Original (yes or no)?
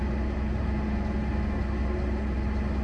yes